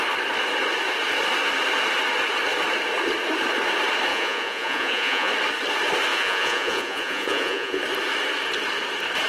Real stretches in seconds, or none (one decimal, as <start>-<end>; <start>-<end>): 0.0-4.1; 5.3-6.1; 7.8-9.3

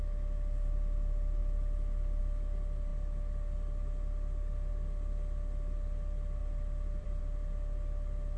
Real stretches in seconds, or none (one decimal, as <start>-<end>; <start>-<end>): 0.0-6.4; 7.2-8.4